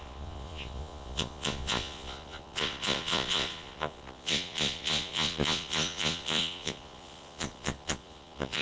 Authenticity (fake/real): fake